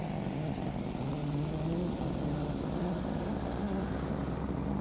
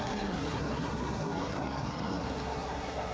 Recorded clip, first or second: first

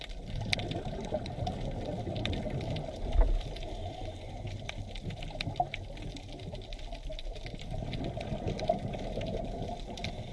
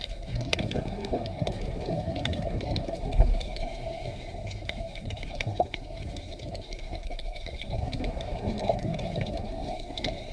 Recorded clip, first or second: first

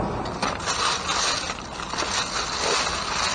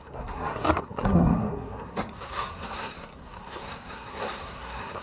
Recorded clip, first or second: first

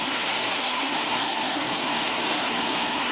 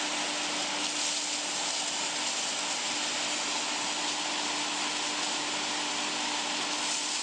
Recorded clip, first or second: second